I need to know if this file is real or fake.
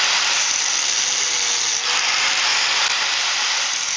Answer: fake